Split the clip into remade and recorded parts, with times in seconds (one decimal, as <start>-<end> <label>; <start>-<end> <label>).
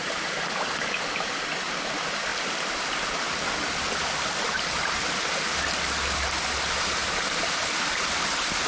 0.0-8.7 recorded